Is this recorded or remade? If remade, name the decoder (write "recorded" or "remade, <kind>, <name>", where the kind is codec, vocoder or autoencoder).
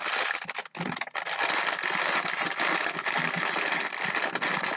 recorded